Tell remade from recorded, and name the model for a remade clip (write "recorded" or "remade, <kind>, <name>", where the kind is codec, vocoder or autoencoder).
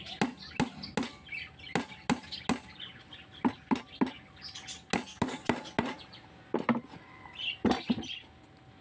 recorded